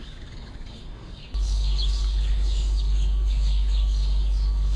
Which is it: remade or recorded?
remade